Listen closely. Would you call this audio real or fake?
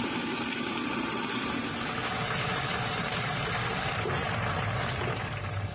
fake